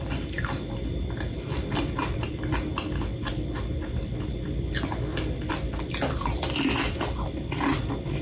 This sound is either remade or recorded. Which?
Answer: recorded